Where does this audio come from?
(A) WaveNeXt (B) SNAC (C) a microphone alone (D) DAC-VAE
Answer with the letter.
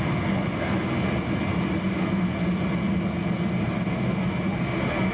C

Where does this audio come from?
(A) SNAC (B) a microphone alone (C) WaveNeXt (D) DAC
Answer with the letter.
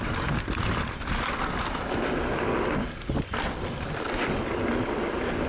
B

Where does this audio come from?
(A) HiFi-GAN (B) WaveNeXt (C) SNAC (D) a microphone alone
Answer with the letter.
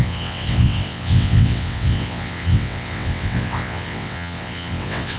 B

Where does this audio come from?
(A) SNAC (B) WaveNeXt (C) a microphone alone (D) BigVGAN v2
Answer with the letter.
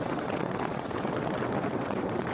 B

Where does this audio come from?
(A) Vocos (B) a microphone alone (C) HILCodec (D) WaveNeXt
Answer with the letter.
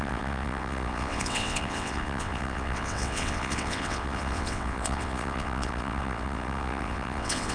D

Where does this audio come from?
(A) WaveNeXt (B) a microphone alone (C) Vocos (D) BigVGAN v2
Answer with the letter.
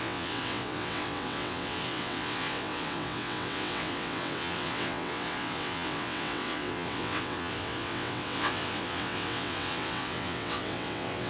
A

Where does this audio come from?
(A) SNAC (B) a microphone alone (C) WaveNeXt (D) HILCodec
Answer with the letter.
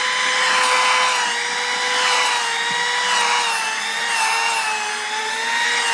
B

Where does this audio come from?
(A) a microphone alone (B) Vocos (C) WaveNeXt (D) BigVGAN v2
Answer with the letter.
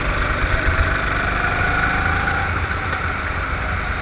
A